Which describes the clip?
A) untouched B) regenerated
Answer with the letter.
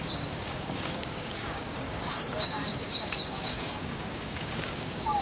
B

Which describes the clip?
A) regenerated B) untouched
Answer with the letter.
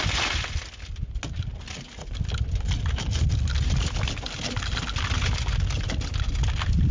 B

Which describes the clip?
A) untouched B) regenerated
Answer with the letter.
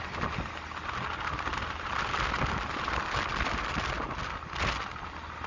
A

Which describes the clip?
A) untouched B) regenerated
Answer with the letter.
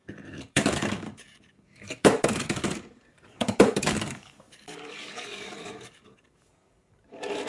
B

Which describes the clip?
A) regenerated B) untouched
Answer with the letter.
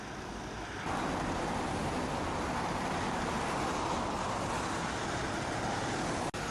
B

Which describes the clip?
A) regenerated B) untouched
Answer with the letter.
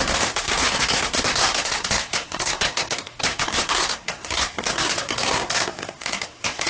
A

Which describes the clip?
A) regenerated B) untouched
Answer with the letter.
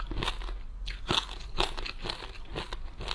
B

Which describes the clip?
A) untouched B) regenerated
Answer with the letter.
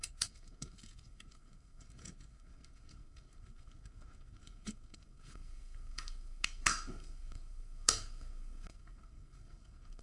B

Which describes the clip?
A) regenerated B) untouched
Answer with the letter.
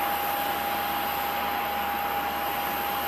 B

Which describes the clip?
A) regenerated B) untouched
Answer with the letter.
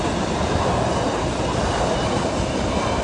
B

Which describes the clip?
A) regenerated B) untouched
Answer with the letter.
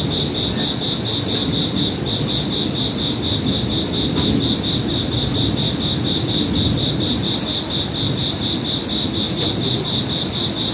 B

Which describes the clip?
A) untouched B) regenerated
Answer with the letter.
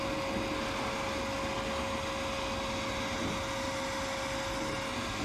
A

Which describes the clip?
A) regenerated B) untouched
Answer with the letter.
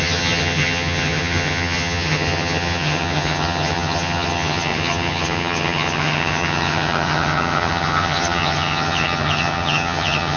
A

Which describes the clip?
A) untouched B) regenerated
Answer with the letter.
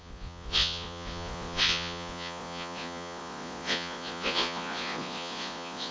B